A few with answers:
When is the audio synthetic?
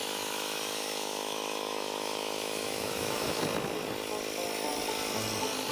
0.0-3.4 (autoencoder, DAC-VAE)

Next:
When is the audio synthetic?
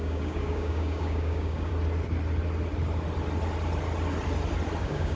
0.0-1.7 (codec, DAC); 4.8-5.2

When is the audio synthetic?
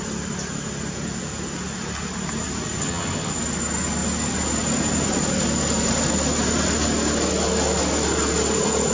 2.8-3.3 (vocoder, HiFi-GAN)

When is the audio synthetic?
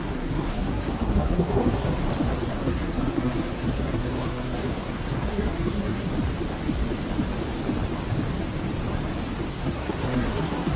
0.0-2.0 (codec, SNAC); 2.5-6.1; 9.5-10.8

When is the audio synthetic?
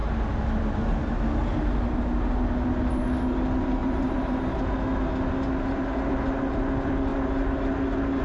3.8-4.6 (vocoder, BigVGAN v2)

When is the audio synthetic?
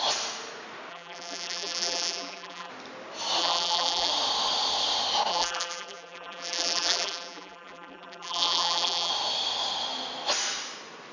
0.9-2.7 (vocoder, BigVGAN v2); 3.4-4.1; 5.3-9.1